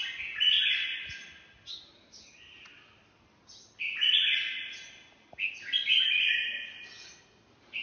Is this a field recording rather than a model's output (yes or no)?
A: yes